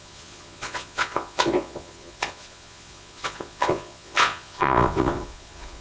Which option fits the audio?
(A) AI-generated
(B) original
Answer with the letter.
A